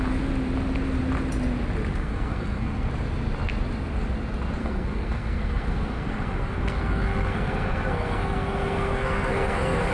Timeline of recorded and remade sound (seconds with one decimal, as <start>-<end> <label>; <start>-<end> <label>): 0.0-1.9 recorded; 1.9-2.9 remade; 2.9-4.6 recorded; 4.6-9.9 remade